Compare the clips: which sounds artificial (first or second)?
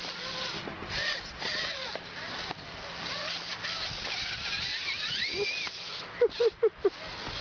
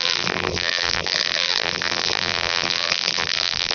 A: second